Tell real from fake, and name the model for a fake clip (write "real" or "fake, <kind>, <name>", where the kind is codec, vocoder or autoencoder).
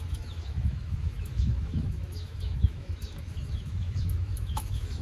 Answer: fake, autoencoder, DAC-VAE